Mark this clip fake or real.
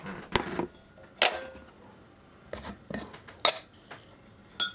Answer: real